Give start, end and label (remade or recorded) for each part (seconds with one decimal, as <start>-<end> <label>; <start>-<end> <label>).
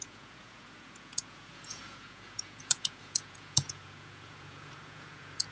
0.0-5.5 remade